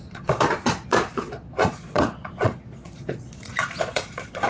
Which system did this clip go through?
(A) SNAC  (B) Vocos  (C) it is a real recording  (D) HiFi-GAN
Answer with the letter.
B